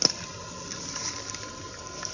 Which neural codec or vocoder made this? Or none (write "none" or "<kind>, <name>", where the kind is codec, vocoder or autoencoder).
none